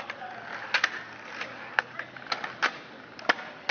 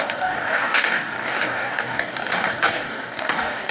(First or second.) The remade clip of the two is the second